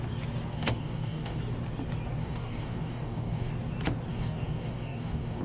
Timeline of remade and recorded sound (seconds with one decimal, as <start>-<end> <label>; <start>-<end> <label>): 0.0-0.5 recorded; 0.5-1.4 remade; 1.4-2.2 recorded; 2.2-3.5 remade; 3.5-4.1 recorded; 4.1-5.4 remade